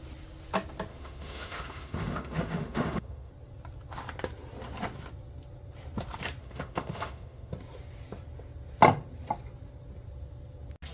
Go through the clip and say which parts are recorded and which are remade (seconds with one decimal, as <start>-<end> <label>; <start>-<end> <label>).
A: 0.0-0.9 recorded; 0.9-3.3 remade; 3.3-6.4 recorded; 6.4-7.5 remade; 7.5-10.9 recorded